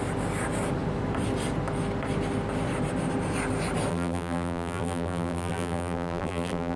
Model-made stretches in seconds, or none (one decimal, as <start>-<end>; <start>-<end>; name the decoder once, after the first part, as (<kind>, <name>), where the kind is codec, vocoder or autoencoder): 3.9-6.8 (vocoder, BigVGAN v2)